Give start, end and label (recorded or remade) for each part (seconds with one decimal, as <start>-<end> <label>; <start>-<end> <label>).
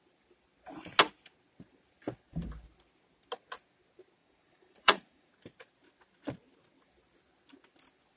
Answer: 0.0-4.2 recorded; 4.2-5.3 remade; 5.3-8.2 recorded